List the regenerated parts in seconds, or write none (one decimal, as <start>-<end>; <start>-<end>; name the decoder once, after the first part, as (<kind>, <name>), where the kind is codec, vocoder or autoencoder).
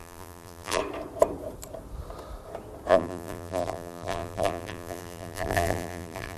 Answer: 0.0-0.8 (vocoder, BigVGAN v2); 2.9-6.4